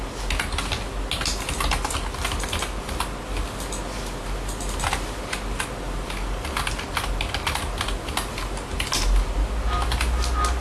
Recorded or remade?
recorded